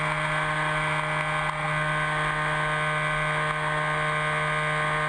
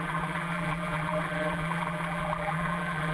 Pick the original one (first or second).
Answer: first